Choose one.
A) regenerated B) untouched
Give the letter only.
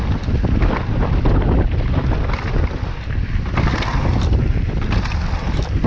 B